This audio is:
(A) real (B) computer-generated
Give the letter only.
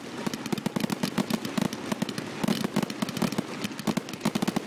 A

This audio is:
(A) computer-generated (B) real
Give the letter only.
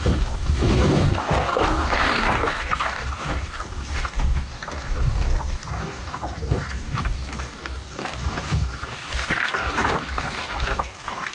A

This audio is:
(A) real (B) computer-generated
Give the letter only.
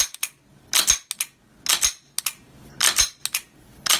A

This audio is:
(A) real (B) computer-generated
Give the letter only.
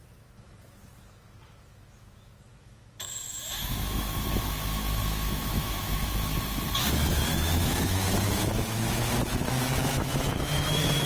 B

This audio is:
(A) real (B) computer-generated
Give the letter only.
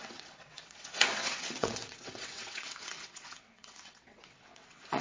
B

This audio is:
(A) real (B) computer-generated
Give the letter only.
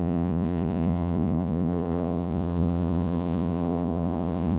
B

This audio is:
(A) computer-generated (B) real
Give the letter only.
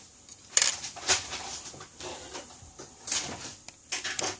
B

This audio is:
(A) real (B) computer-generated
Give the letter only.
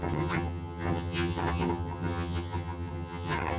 B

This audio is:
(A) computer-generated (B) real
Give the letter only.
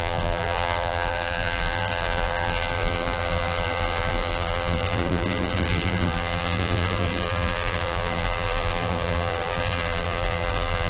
A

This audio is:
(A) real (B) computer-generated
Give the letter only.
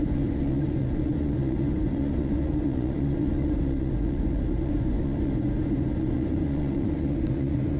B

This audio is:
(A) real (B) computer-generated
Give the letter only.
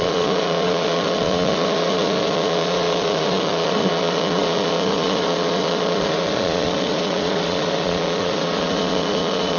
B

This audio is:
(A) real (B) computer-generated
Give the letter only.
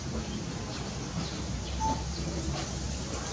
B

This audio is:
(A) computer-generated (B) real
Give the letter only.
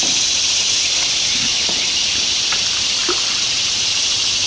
B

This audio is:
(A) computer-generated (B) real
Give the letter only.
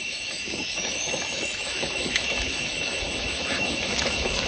A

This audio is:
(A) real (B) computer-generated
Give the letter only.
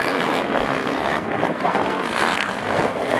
B